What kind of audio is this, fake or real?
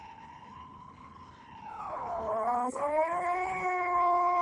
fake